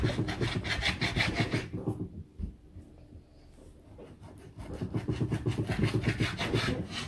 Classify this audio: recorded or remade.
recorded